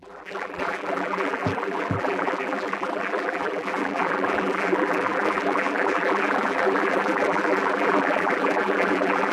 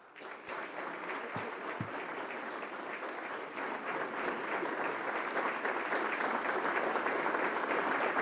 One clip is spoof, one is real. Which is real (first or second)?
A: second